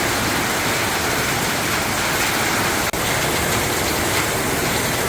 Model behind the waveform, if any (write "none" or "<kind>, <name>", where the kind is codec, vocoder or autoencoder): none